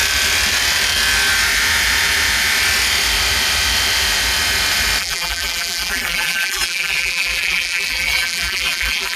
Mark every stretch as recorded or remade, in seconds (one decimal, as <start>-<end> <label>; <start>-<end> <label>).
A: 0.0-5.0 recorded; 5.0-9.2 remade